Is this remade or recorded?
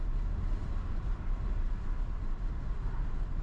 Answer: remade